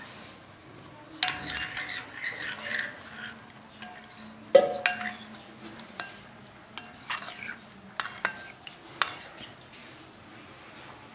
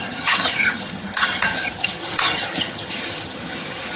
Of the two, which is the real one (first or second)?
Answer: first